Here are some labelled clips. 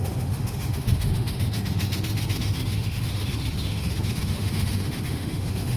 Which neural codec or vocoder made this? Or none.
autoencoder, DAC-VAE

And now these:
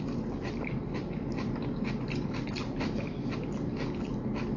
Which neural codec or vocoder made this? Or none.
none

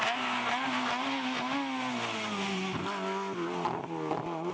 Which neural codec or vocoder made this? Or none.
none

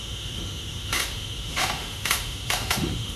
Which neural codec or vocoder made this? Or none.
autoencoder, DAC-VAE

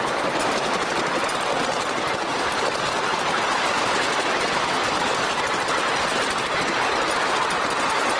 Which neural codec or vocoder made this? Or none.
none